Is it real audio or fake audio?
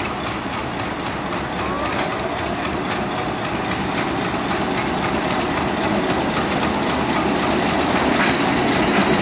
real